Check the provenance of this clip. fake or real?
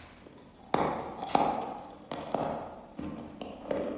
real